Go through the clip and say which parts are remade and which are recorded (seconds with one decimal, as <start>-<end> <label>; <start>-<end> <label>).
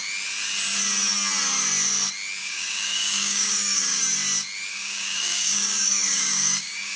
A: 0.0-2.4 recorded; 2.4-4.0 remade; 4.0-4.7 recorded; 4.7-7.0 remade